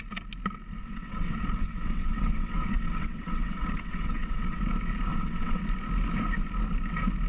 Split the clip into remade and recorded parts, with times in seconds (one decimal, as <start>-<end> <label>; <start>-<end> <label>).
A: 0.0-0.8 recorded; 0.8-4.6 remade; 4.6-5.1 recorded; 5.1-5.6 remade; 5.6-7.3 recorded